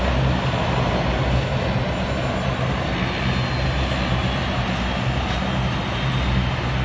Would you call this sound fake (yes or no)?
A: no